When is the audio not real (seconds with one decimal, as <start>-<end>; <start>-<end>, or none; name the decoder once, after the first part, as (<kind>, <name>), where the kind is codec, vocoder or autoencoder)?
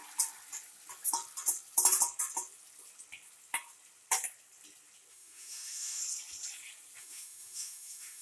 5.1-6.0 (autoencoder, DAC-VAE); 7.0-8.2